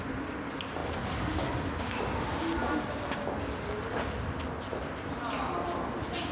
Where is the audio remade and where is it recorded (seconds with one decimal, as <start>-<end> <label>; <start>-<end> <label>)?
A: 0.0-6.3 recorded